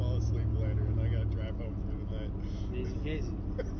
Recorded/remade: recorded